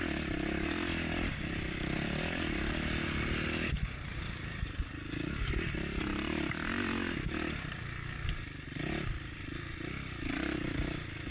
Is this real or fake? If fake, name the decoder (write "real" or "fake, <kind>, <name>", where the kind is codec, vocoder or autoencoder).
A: real